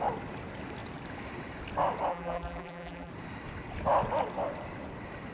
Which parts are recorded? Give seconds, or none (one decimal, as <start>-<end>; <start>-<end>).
0.0-2.1; 3.1-5.3